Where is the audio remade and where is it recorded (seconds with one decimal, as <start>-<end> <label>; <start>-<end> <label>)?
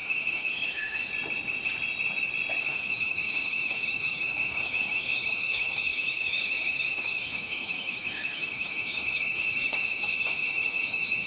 0.0-1.1 remade; 1.1-2.6 recorded; 2.6-11.3 remade